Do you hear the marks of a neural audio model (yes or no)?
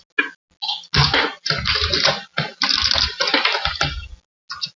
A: no